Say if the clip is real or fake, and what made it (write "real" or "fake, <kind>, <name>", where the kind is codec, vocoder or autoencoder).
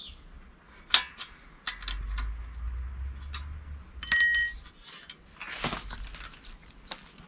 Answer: real